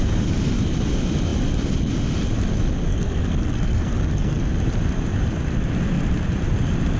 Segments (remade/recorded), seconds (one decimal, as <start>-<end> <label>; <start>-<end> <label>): 0.0-2.9 recorded; 2.9-4.4 remade; 4.4-7.0 recorded